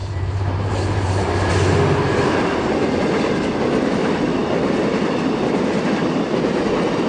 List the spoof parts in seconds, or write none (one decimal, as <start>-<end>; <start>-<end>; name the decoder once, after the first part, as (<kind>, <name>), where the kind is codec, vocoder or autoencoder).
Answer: 0.0-1.5 (vocoder, BigVGAN v2)